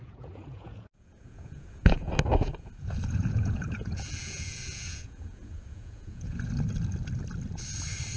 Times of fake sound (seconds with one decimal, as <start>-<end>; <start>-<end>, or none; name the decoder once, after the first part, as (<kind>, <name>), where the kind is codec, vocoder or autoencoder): 0.0-1.9 (vocoder, Vocos); 2.3-6.5